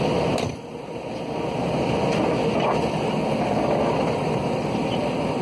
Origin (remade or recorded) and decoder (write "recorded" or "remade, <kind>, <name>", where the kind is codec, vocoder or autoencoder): recorded